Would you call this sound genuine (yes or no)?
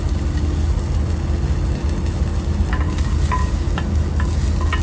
yes